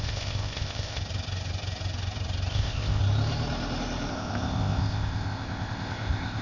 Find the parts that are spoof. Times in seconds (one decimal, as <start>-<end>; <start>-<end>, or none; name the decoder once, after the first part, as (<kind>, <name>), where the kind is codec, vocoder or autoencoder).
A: 0.0-1.0 (codec, ZipCodec); 2.5-3.0; 4.1-6.4